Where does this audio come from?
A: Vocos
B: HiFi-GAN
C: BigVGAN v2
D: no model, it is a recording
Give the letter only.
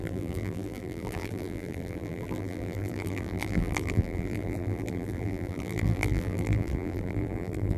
C